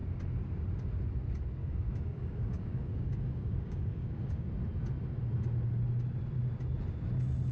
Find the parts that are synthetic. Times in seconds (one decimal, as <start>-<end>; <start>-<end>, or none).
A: 1.6-4.5